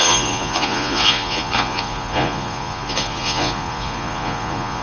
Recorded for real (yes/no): no